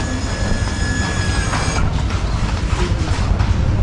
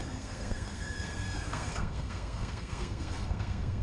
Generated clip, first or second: second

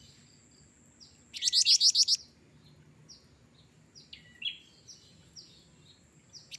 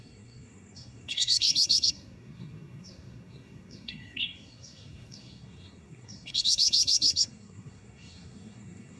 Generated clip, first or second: second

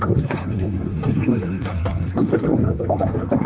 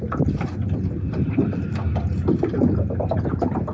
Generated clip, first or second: first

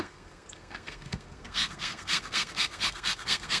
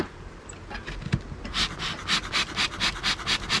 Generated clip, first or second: first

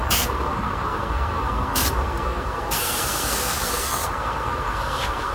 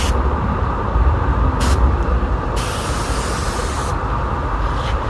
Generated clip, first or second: first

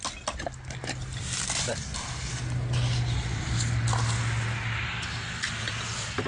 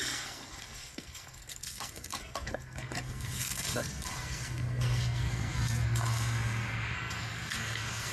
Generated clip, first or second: second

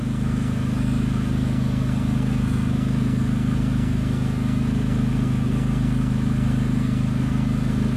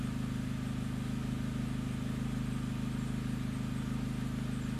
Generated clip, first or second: first